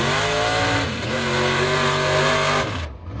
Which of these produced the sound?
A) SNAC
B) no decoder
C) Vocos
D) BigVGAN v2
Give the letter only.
B